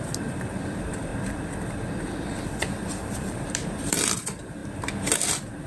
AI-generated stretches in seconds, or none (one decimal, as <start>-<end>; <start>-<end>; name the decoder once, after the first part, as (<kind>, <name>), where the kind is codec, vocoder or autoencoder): 0.0-1.1 (vocoder, BigVGAN v2); 2.9-4.6